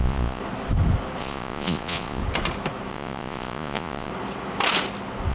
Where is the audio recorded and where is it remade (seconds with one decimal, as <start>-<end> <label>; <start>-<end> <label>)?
0.0-0.4 remade; 0.4-1.2 recorded; 1.2-2.2 remade; 2.2-2.9 recorded; 2.9-4.1 remade; 4.1-5.3 recorded